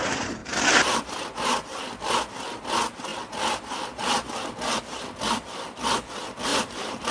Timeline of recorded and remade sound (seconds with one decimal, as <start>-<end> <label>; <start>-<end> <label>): 0.0-0.4 recorded; 0.4-1.1 remade; 1.1-6.5 recorded; 6.5-7.1 remade